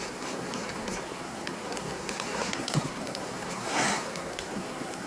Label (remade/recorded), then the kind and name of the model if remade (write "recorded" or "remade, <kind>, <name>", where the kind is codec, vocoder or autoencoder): remade, codec, SNAC